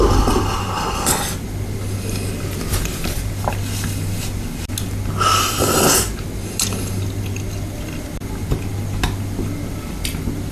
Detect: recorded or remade recorded